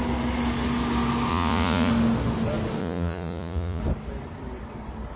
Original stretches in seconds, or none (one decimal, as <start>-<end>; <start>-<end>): 0.0-1.3; 1.9-2.8; 3.8-5.2